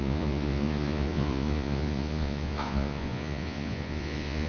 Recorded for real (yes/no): no